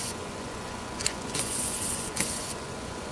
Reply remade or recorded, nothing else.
remade